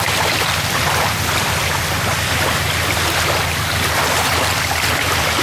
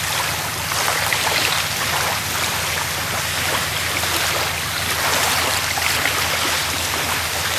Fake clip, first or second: first